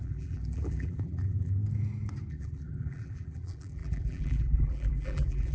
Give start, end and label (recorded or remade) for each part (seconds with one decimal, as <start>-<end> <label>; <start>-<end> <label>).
0.0-1.6 remade; 1.6-2.3 recorded; 2.3-5.5 remade